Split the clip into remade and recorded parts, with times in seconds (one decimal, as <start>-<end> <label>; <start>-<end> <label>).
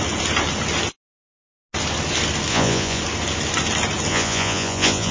0.0-2.5 recorded; 2.5-3.0 remade; 3.0-4.1 recorded; 4.1-5.1 remade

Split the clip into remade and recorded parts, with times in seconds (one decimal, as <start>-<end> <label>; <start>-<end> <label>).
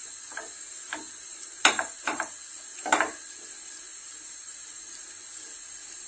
0.0-6.1 recorded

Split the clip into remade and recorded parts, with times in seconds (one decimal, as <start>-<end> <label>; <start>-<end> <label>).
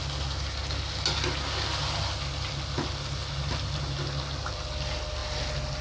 0.0-5.8 recorded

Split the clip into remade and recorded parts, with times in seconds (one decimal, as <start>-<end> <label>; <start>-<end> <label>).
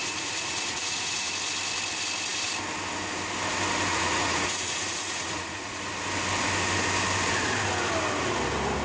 0.0-1.1 remade; 1.1-3.9 recorded; 3.9-5.9 remade; 5.9-8.8 recorded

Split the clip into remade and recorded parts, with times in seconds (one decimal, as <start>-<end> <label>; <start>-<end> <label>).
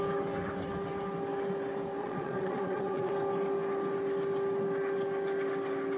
0.0-2.0 recorded; 2.0-3.1 remade; 3.1-6.0 recorded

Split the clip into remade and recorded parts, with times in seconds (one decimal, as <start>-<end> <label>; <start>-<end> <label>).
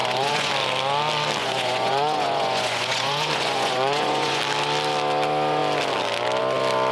0.0-0.5 remade; 0.5-1.4 recorded; 1.4-4.4 remade; 4.4-6.9 recorded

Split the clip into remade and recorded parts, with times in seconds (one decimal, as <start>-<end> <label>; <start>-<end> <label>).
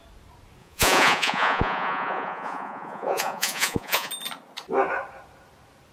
0.0-0.6 recorded; 0.6-4.1 remade; 4.1-5.9 recorded